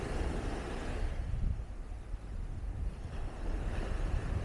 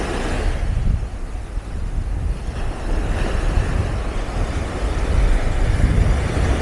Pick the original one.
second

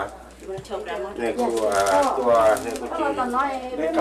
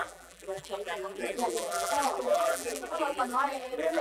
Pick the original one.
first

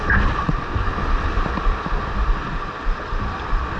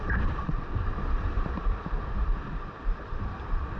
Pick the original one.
first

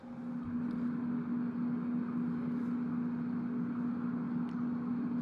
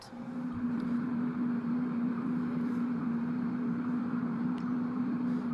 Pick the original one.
first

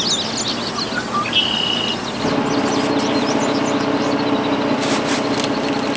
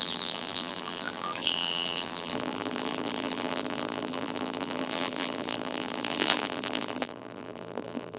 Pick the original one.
first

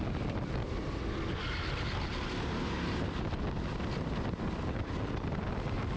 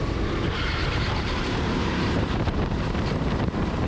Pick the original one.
first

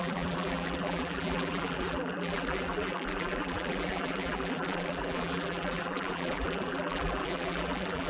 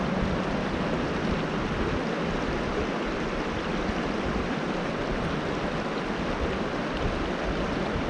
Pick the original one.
second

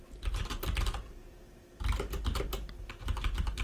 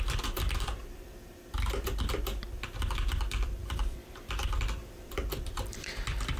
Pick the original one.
first